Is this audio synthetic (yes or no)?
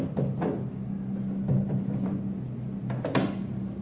no